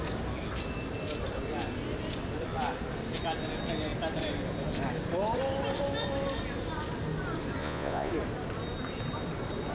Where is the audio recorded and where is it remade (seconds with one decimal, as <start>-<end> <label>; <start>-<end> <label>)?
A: 0.0-7.6 recorded; 7.6-8.1 remade; 8.1-9.7 recorded